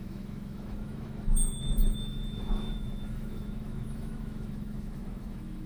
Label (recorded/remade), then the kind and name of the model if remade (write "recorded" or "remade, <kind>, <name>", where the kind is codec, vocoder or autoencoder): remade, autoencoder, DAC-VAE